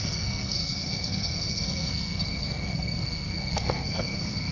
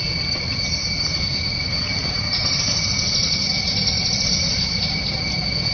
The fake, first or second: first